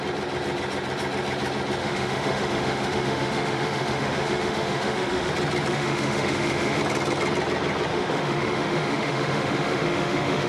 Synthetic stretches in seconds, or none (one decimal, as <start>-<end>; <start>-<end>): 1.8-5.3; 5.7-6.8; 7.9-10.5